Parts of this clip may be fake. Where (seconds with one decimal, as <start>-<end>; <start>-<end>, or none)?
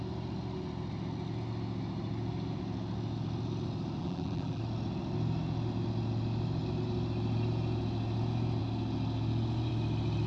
4.0-4.6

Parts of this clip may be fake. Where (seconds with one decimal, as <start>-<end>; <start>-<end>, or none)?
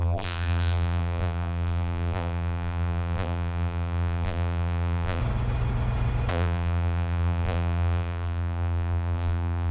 0.0-5.2; 6.3-9.7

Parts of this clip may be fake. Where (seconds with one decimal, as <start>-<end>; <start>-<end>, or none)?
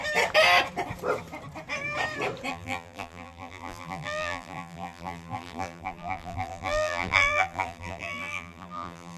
2.5-9.2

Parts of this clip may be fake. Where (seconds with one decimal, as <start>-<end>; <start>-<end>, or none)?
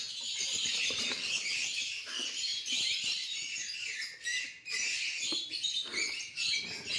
0.0-4.3; 5.2-5.9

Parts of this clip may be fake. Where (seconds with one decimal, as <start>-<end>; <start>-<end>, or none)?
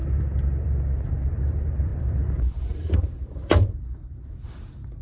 1.3-5.0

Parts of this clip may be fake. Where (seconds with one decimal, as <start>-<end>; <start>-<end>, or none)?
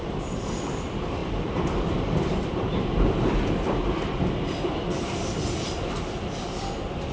0.0-7.1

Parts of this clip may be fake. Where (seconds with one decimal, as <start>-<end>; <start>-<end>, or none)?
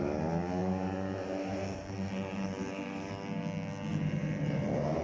0.6-3.1; 3.9-5.0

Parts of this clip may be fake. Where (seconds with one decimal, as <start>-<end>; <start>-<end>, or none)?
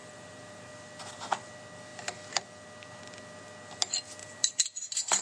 0.0-0.7; 4.2-5.2